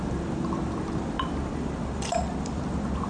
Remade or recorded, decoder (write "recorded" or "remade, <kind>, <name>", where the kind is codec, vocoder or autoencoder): remade, vocoder, BigVGAN v2